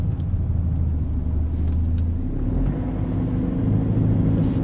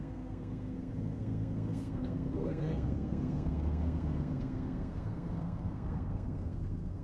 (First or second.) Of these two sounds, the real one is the first